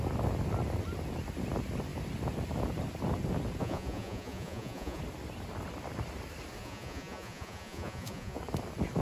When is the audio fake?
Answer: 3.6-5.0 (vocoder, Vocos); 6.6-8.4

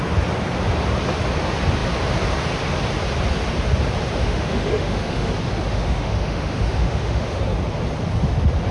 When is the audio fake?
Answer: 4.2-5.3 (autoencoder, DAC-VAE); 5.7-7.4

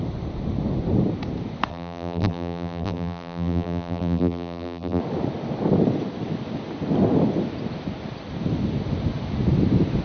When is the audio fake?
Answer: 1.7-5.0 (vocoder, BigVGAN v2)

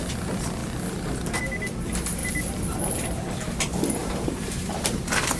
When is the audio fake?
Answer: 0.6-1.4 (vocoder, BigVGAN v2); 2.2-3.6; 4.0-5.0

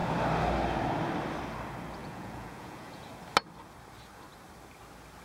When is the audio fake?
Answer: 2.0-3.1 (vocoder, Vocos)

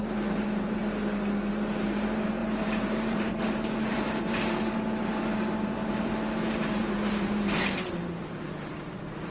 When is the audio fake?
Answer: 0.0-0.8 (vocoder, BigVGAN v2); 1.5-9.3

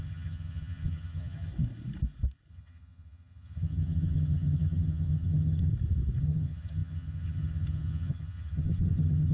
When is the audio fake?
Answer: 0.0-1.5 (vocoder, HiFi-GAN); 2.5-5.7; 6.2-9.3